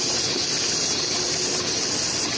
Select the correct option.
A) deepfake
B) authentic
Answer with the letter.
B